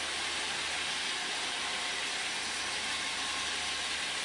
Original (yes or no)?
yes